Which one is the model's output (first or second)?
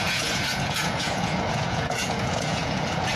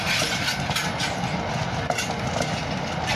first